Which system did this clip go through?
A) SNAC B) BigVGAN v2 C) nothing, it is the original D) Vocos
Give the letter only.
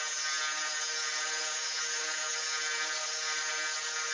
C